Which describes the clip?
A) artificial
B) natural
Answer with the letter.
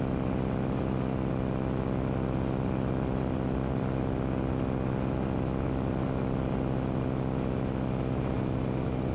B